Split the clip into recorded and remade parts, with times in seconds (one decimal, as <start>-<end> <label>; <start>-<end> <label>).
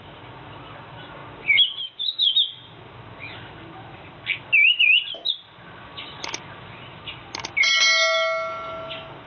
0.0-9.3 recorded